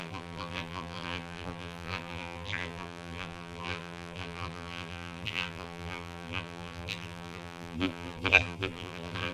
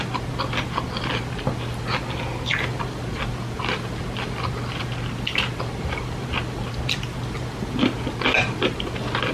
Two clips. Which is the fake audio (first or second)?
first